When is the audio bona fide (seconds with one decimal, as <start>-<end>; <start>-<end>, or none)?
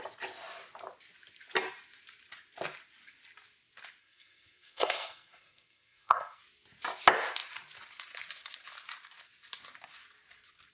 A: 0.0-4.0; 6.4-10.7